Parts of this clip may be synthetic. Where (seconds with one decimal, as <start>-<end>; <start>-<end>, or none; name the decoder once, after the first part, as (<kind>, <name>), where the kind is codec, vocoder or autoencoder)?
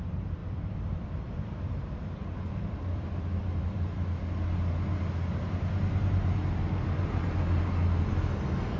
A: 0.4-4.2 (vocoder, BigVGAN v2)